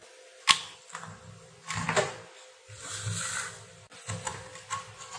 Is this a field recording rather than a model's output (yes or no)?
yes